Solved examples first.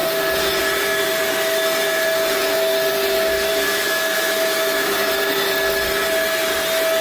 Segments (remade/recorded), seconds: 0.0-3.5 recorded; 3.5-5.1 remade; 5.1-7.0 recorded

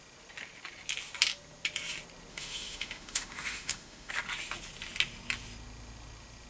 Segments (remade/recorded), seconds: 0.0-2.3 recorded; 2.3-4.1 remade; 4.1-6.5 recorded

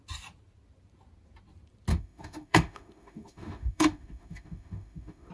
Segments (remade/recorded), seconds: 0.0-1.9 recorded; 1.9-5.3 remade

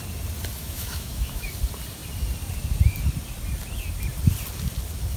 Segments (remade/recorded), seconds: 0.0-0.6 recorded; 0.6-1.5 remade; 1.5-5.2 recorded